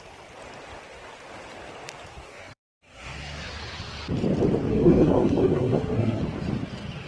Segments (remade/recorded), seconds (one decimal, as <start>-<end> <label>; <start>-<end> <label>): 0.0-2.2 recorded; 2.2-3.5 remade; 3.5-4.7 recorded; 4.7-6.2 remade; 6.2-7.1 recorded